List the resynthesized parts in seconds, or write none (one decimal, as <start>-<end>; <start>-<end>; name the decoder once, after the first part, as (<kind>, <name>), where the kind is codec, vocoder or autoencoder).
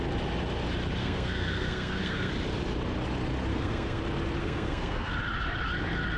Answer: 1.0-2.3 (codec, SNAC); 3.5-4.0; 4.4-5.1